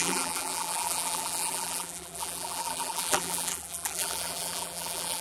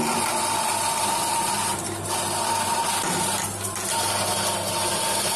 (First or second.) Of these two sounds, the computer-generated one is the first